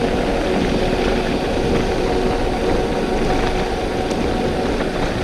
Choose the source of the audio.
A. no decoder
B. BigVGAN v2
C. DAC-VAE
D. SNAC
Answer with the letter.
A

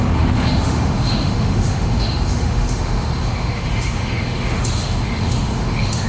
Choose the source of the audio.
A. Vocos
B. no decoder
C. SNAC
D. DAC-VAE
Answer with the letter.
D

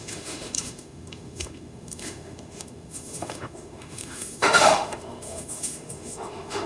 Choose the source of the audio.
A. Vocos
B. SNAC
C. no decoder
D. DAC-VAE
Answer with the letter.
D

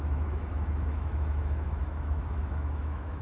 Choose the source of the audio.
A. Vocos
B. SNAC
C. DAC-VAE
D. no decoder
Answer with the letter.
C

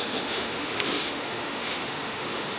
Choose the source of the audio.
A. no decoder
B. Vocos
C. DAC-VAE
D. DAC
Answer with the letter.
C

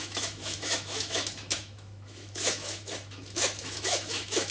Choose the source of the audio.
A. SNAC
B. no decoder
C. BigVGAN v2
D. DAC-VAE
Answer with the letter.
D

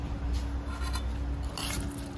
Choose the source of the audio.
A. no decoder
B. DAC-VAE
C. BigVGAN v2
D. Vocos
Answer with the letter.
A